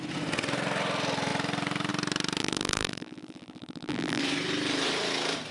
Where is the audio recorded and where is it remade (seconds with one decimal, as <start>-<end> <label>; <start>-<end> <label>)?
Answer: 0.0-2.4 recorded; 2.4-4.2 remade; 4.2-5.5 recorded